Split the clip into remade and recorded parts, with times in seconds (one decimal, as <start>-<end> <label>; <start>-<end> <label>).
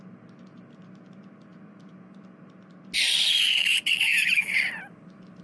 0.0-5.4 recorded